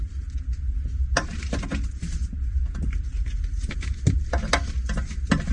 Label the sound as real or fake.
real